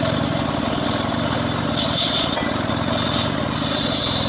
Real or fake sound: real